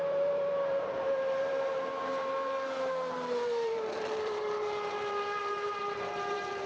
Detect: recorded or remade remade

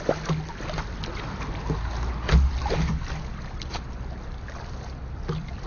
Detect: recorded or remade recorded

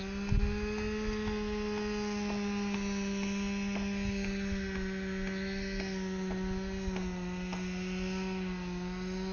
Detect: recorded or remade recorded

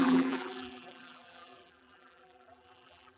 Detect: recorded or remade remade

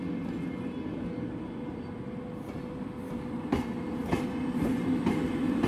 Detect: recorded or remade recorded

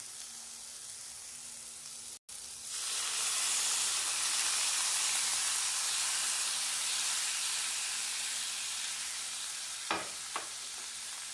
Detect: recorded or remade recorded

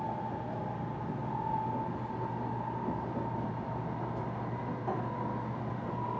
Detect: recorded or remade recorded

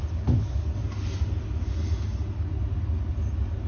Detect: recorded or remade recorded